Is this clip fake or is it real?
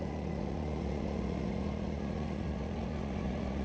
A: fake